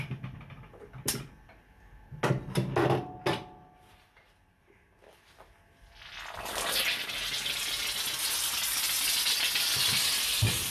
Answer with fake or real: real